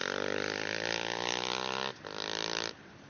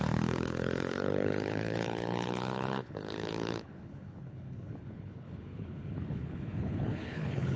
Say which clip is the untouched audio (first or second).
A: first